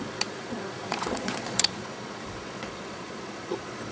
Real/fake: fake